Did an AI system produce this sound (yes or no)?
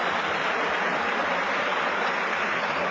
no